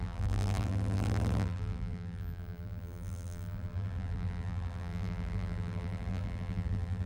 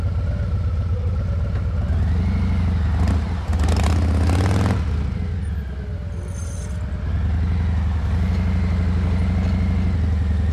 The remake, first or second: first